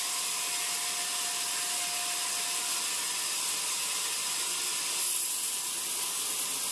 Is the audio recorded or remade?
recorded